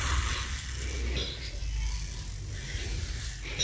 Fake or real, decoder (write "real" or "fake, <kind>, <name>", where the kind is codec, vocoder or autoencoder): real